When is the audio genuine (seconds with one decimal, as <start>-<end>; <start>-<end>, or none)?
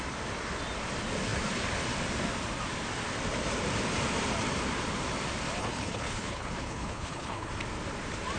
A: 0.0-5.6; 7.5-8.4